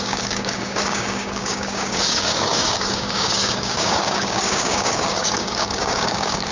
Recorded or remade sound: remade